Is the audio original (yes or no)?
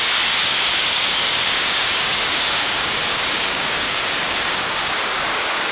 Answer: no